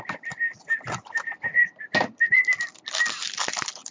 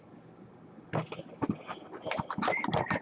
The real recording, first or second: second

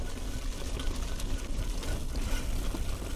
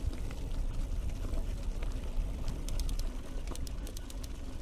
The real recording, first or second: second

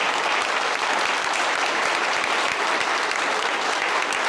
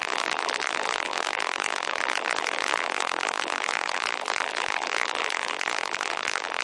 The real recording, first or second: first